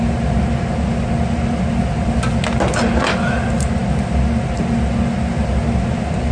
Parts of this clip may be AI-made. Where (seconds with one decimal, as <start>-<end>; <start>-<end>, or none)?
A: none